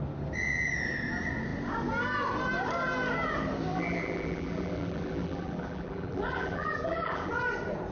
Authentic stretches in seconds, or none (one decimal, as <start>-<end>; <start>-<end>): 0.0-3.7; 7.4-7.9